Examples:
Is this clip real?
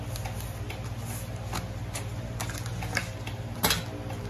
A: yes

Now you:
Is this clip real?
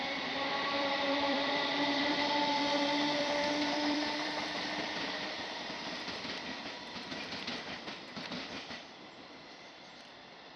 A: no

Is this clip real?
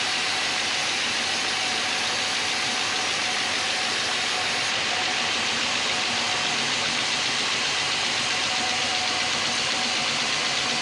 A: yes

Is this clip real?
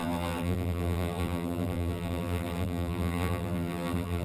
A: no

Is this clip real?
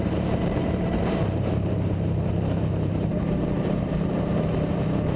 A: no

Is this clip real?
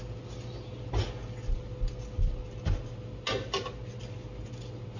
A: yes